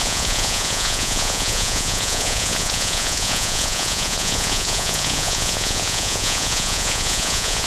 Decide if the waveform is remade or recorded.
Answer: remade